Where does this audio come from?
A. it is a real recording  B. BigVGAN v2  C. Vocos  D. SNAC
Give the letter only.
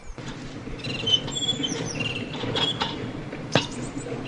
B